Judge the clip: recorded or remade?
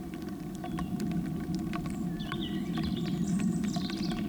remade